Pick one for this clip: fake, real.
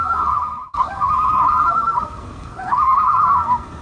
fake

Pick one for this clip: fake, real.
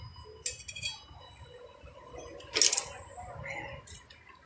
real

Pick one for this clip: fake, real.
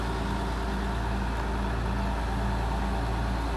real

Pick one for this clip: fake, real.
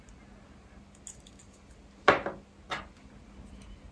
real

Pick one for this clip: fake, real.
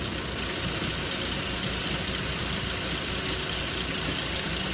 real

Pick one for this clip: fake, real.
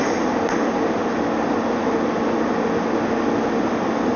real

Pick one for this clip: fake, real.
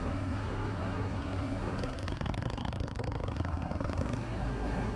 fake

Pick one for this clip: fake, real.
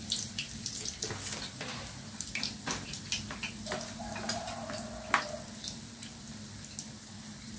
real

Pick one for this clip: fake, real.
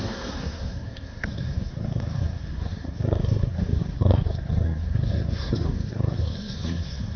fake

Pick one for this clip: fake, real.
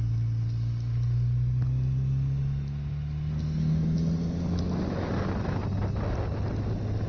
real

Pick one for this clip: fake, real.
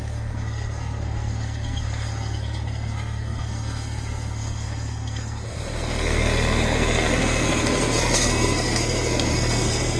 fake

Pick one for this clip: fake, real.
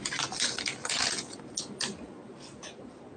real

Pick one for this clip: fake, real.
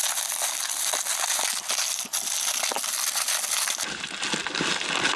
real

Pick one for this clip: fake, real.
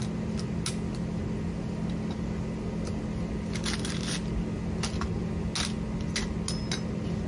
real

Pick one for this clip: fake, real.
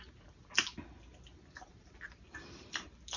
real